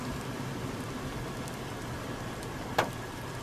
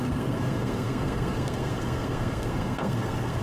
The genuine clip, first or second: first